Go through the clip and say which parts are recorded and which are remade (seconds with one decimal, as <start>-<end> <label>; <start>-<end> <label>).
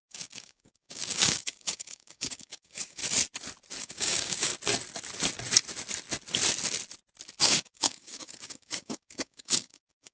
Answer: 0.0-3.0 remade; 3.0-3.8 recorded; 3.8-4.5 remade; 4.5-7.4 recorded; 7.4-10.1 remade